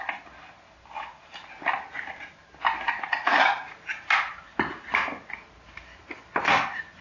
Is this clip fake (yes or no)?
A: no